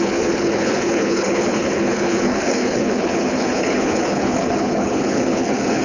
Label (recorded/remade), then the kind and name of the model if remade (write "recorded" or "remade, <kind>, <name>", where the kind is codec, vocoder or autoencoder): remade, codec, HILCodec